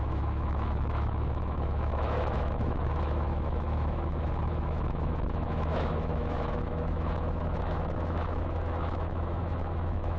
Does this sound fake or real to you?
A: fake